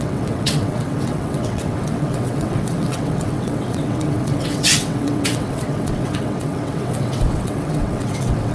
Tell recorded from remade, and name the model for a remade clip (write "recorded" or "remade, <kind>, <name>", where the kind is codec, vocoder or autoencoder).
remade, vocoder, WaveNeXt